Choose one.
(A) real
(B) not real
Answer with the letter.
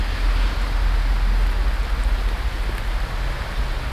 A